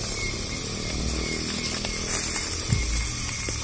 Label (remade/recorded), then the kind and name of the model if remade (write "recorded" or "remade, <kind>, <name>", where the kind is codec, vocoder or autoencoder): recorded